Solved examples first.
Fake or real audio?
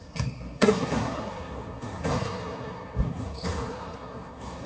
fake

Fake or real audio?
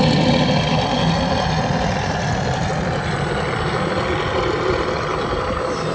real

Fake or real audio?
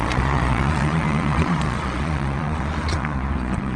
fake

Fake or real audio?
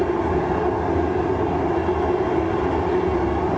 real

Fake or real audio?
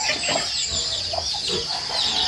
real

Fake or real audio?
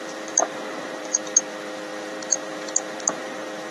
fake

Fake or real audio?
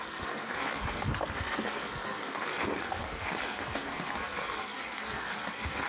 fake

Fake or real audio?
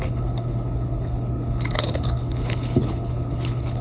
fake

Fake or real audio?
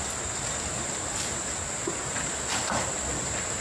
real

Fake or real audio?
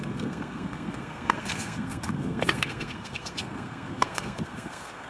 fake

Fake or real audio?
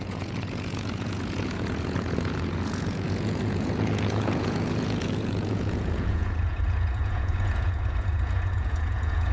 fake